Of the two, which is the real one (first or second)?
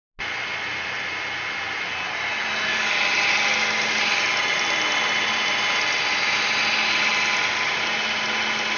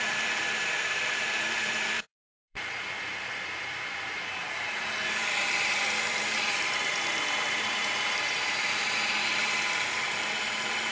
first